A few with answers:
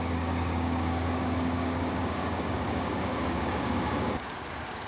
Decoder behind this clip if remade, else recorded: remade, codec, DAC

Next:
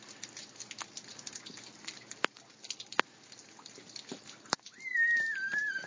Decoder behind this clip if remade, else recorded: recorded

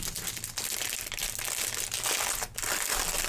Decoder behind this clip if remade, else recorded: recorded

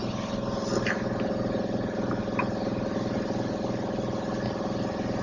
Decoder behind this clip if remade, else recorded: recorded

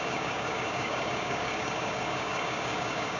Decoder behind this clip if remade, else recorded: remade, codec, DAC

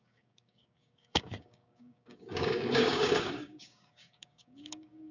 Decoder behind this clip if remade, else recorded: remade, codec, DAC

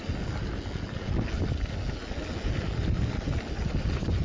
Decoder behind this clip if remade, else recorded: recorded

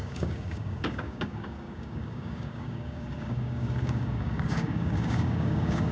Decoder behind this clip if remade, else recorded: remade, codec, DAC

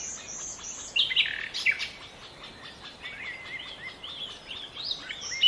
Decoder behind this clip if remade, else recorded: recorded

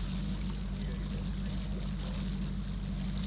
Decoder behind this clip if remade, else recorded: recorded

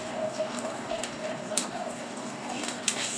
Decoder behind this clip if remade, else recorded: remade, codec, DAC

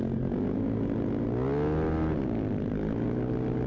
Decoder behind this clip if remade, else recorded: recorded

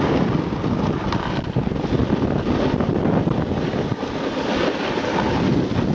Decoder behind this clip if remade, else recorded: recorded